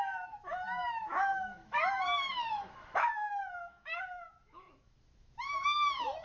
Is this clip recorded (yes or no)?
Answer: no